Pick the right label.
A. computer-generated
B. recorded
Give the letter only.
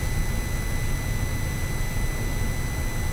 B